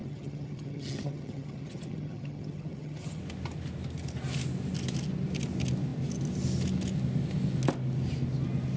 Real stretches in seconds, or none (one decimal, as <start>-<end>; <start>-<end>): 3.2-8.8